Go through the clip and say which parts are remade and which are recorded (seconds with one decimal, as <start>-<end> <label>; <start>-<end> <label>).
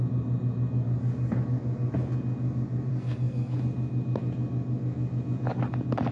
0.0-2.9 recorded; 2.9-3.6 remade; 3.6-6.1 recorded